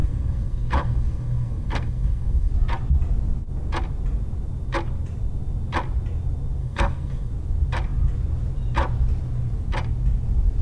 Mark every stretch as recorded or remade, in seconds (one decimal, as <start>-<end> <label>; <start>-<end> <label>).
0.0-2.5 remade; 2.5-6.6 recorded; 6.6-7.3 remade; 7.3-10.6 recorded